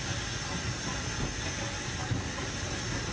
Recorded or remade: recorded